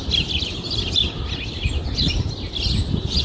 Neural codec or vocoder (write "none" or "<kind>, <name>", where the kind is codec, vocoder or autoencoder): none